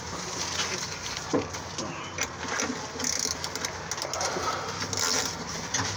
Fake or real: real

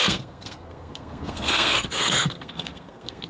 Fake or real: fake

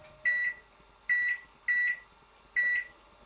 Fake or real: real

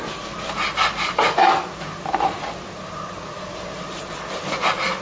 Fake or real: real